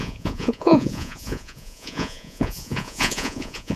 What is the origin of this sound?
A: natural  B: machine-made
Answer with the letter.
B